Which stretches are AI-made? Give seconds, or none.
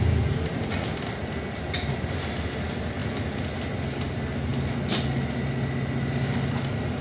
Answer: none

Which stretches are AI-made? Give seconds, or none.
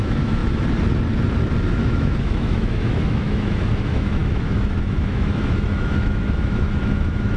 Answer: 0.0-0.4 (autoencoder, DAC-VAE); 1.7-7.4